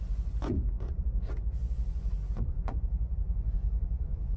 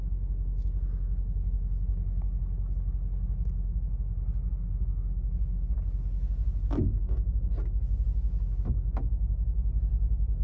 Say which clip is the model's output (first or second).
first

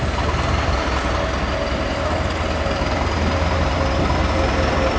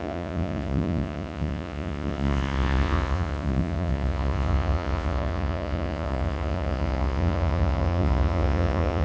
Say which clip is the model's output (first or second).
second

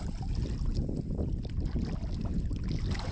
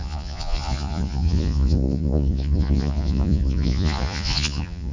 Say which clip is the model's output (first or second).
second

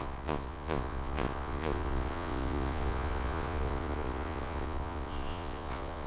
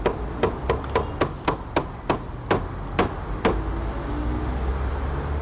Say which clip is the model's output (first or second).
first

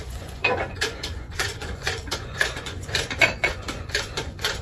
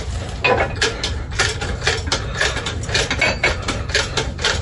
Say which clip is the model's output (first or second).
first